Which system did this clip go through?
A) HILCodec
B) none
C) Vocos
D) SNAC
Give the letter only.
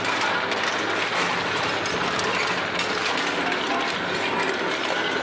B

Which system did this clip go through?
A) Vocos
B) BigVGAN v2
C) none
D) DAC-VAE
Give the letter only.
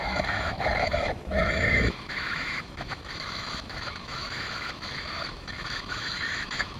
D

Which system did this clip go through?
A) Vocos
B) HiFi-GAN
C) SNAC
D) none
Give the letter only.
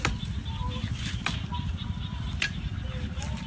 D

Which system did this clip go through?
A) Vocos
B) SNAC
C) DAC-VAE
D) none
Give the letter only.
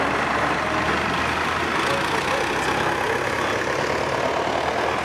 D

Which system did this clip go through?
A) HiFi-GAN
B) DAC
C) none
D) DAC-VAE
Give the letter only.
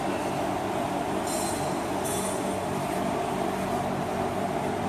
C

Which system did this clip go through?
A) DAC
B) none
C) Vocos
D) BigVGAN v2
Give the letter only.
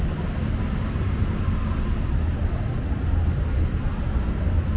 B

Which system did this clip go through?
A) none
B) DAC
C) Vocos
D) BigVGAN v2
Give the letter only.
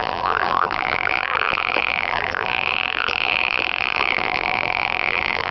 D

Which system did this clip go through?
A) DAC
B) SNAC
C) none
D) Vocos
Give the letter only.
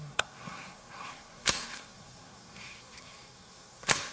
B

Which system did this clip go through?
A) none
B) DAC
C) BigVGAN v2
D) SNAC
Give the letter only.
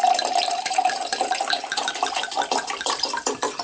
C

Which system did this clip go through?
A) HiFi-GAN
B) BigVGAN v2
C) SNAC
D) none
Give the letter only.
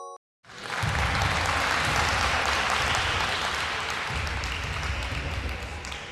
D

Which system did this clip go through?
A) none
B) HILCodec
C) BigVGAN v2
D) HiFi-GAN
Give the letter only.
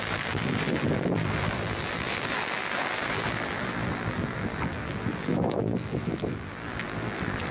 C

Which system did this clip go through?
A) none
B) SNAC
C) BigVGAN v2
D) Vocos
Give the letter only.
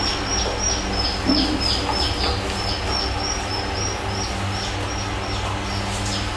A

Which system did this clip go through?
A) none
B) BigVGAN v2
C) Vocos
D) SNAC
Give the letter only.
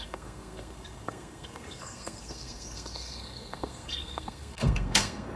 D